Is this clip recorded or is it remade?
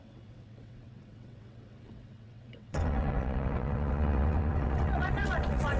remade